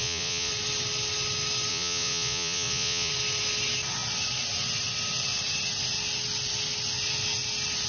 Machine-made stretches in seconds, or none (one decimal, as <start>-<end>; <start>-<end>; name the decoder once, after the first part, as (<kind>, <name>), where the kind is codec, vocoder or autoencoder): 0.0-0.5 (vocoder, Vocos); 1.7-3.1